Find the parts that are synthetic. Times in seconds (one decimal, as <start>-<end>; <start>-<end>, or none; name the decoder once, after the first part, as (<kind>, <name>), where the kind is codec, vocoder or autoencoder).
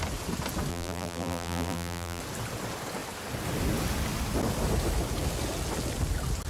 0.7-2.2 (vocoder, BigVGAN v2)